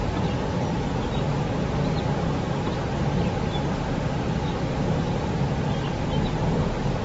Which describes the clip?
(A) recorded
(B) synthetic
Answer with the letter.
A